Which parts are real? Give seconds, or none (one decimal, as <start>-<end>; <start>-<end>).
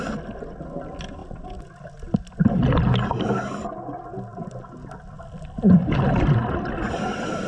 0.0-1.2; 2.6-7.5